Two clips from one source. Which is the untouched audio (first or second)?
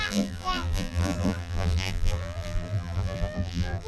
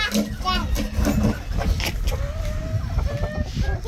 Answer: second